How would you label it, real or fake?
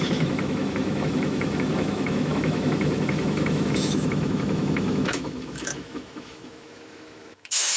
fake